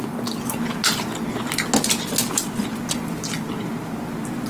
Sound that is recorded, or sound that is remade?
recorded